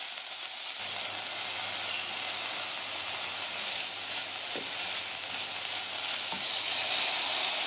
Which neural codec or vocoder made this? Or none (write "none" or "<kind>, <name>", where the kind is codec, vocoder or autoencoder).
none